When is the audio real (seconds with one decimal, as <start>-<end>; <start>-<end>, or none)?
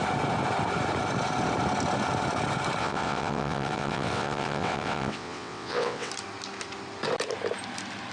0.0-2.8; 6.1-8.1